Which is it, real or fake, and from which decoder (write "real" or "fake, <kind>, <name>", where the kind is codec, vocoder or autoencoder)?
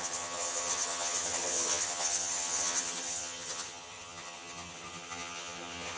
fake, vocoder, HiFi-GAN